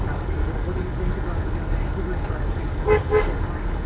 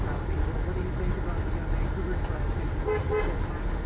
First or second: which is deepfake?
first